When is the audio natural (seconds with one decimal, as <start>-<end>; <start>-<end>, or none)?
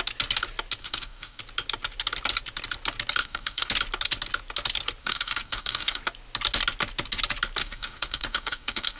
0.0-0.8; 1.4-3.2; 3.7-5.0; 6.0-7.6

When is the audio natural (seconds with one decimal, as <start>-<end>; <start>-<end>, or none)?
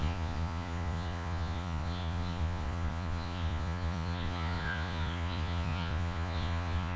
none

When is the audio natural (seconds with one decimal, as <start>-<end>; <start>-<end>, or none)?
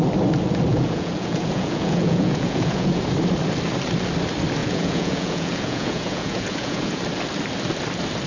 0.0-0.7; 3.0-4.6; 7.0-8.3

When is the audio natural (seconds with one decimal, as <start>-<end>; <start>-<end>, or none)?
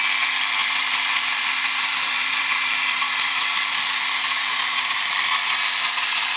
0.0-0.6; 4.4-6.4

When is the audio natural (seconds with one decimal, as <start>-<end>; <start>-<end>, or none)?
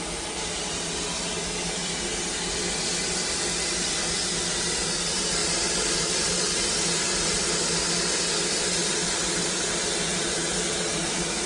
0.0-11.5